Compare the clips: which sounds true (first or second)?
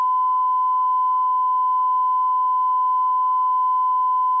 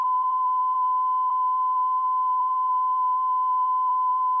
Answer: first